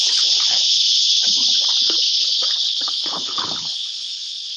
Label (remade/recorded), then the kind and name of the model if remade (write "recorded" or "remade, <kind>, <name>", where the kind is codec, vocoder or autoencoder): remade, codec, HILCodec